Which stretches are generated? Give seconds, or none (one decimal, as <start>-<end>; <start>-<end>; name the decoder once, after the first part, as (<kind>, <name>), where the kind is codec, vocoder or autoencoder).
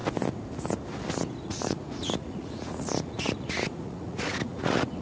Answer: 1.4-5.0 (vocoder, Vocos)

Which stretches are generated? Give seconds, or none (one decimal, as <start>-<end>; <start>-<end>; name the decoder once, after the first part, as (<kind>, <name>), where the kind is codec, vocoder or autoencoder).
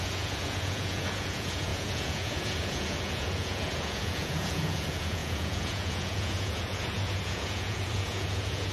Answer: 0.0-8.7 (vocoder, Vocos)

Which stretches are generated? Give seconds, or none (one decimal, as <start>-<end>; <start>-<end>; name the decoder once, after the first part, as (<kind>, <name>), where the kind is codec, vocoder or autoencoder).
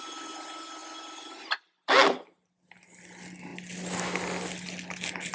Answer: none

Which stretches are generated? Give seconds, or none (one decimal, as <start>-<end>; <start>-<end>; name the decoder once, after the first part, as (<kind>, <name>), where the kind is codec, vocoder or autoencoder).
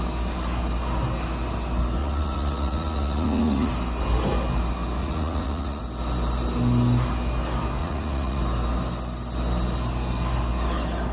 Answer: 2.0-3.7 (vocoder, Vocos); 5.0-5.8; 7.8-8.4